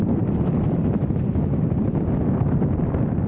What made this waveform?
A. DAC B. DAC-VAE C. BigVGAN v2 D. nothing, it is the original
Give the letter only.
D